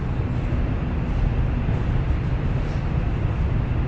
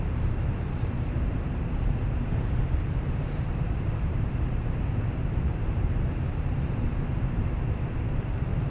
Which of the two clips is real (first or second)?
first